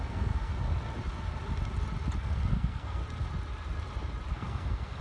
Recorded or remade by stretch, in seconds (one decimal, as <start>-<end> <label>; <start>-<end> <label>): 0.0-0.5 remade; 0.5-2.2 recorded; 2.2-3.0 remade; 3.0-4.3 recorded; 4.3-5.0 remade